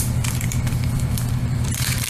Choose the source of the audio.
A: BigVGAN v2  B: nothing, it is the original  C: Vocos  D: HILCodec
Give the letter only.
A